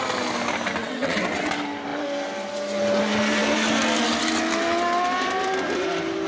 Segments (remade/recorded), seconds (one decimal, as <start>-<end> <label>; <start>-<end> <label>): 0.0-0.8 recorded; 0.8-1.5 remade; 1.5-6.3 recorded